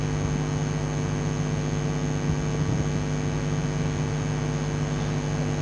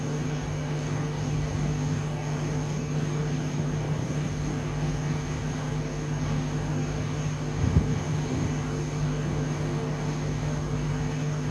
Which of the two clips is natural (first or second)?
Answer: first